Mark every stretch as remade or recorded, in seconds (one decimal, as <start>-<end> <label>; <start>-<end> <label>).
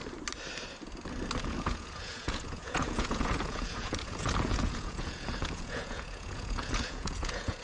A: 0.0-1.4 recorded; 1.4-7.6 remade